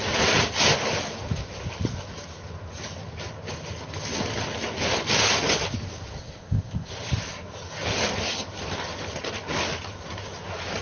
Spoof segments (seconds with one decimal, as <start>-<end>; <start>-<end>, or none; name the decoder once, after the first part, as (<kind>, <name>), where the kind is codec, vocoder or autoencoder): 6.2-6.9 (codec, ZipCodec)